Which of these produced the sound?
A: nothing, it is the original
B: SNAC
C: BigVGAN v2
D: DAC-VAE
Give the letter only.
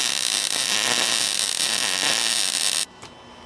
C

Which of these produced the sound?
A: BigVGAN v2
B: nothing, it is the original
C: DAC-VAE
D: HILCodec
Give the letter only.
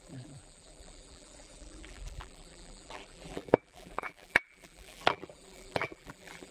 A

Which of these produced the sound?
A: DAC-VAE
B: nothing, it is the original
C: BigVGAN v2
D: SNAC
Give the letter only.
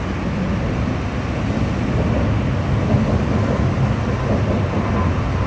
B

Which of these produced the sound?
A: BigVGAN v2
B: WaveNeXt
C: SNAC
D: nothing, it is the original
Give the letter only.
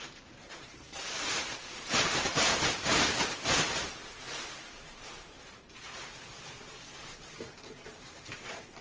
A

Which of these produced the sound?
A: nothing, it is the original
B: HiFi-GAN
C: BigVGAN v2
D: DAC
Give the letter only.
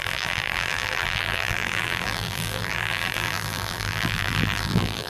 C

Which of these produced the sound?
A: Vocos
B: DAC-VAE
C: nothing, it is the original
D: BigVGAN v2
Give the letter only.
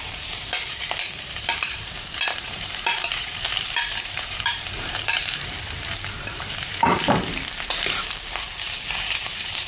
D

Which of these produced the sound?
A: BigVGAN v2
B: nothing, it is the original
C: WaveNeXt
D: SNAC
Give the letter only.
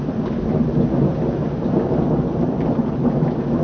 B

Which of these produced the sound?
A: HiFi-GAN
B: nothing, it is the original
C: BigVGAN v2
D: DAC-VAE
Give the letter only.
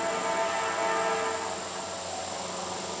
B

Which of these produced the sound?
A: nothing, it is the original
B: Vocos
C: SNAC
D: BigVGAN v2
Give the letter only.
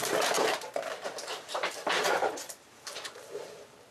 D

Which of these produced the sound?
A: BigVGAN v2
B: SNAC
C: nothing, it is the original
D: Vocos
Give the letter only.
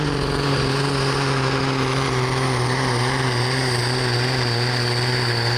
C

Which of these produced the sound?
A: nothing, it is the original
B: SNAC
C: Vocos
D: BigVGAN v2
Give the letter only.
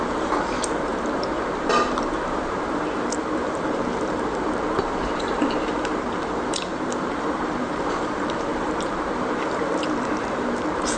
D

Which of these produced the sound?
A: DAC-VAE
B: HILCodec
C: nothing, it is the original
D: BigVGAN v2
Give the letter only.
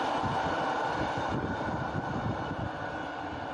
D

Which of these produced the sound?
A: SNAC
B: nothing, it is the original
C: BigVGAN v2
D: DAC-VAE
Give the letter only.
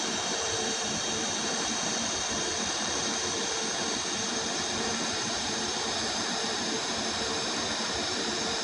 C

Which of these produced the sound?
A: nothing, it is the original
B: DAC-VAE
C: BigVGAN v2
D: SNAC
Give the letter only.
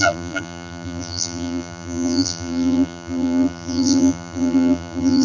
C